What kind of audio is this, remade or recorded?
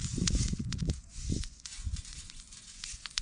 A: remade